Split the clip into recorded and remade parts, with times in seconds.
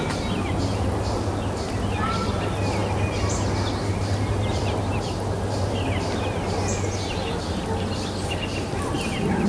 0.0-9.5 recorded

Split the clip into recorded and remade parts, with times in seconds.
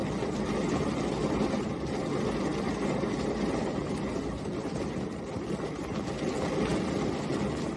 0.0-7.8 recorded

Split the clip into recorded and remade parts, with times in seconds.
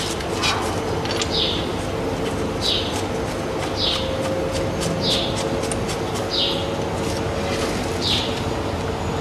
0.0-9.2 recorded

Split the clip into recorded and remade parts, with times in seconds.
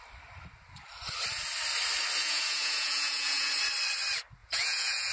0.0-2.2 recorded; 2.2-3.5 remade; 3.5-4.4 recorded; 4.4-5.1 remade